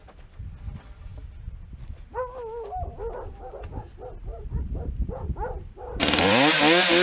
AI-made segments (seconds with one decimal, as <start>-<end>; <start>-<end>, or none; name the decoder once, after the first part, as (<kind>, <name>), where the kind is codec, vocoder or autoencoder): 4.3-6.6 (vocoder, BigVGAN v2)